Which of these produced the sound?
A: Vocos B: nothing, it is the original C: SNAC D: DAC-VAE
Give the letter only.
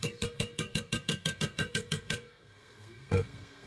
C